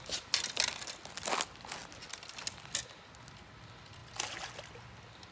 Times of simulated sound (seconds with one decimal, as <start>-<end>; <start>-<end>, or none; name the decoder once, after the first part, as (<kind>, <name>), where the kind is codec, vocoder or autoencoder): none